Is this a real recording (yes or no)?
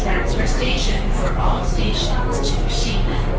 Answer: no